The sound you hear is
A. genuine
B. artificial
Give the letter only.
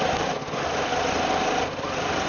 A